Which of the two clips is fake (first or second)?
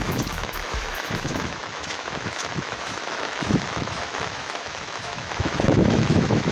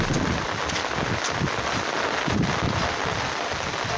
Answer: first